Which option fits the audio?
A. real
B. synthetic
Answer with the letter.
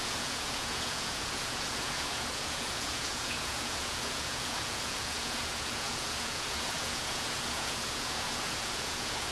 B